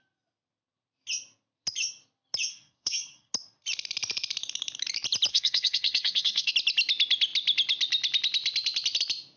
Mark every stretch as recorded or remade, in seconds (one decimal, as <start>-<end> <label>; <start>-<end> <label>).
0.0-2.5 recorded; 2.5-3.3 remade; 3.3-5.3 recorded; 5.3-6.5 remade; 6.5-9.4 recorded